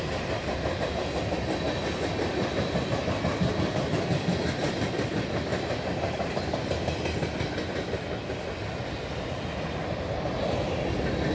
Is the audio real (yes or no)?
yes